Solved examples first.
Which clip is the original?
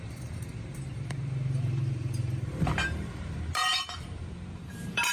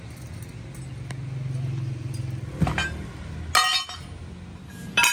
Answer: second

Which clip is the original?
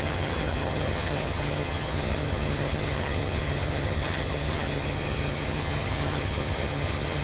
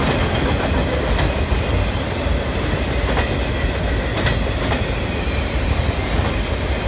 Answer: second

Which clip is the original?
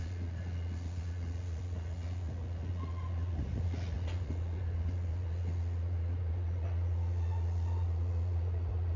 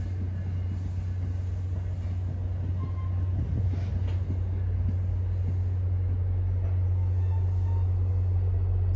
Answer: second